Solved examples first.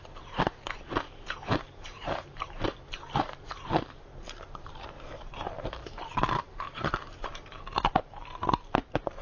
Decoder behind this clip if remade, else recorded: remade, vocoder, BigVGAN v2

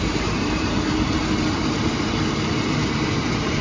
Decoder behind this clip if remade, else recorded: remade, vocoder, BigVGAN v2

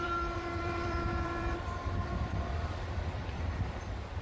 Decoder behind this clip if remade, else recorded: remade, vocoder, BigVGAN v2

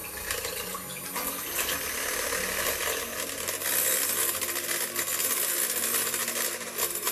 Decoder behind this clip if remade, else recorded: recorded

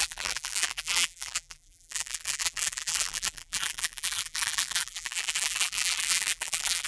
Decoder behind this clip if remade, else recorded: remade, vocoder, BigVGAN v2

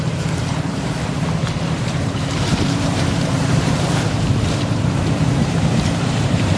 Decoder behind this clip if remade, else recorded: remade, vocoder, BigVGAN v2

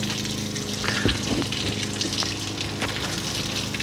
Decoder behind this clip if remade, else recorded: recorded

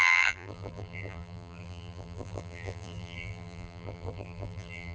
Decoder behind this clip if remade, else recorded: remade, vocoder, BigVGAN v2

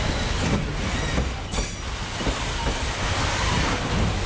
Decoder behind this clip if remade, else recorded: recorded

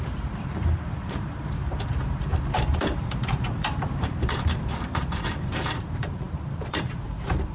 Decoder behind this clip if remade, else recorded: remade, vocoder, BigVGAN v2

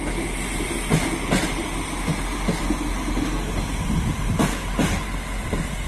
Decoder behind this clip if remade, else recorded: recorded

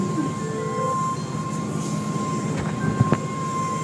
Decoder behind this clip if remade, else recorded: recorded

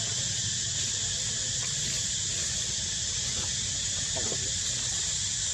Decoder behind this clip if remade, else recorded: recorded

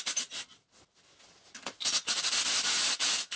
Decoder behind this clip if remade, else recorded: recorded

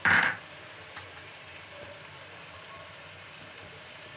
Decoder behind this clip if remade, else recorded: remade, vocoder, BigVGAN v2